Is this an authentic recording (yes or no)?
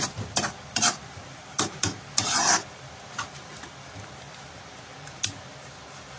no